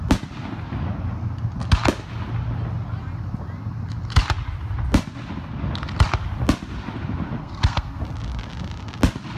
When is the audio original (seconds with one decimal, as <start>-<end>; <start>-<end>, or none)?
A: 0.0-7.4; 8.0-9.4